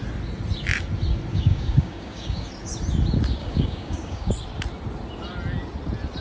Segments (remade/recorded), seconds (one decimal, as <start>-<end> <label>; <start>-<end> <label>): 0.0-1.3 recorded; 1.3-2.5 remade; 2.5-3.4 recorded; 3.4-4.3 remade; 4.3-6.2 recorded